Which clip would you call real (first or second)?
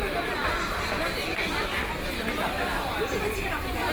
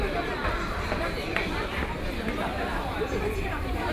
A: first